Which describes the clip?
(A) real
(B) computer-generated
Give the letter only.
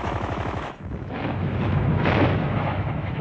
B